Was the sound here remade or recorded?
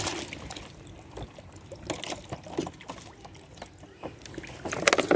recorded